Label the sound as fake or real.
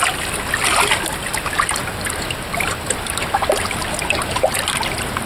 real